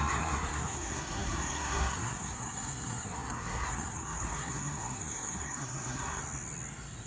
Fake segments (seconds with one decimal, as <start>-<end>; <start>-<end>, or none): 0.0-6.2